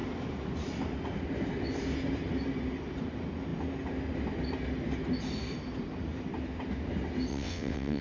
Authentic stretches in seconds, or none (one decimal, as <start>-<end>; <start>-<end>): 0.0-7.3